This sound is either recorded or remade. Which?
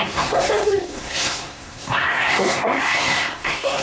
remade